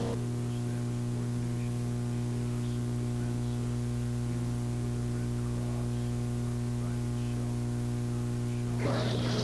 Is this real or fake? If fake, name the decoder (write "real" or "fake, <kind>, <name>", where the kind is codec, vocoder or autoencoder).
real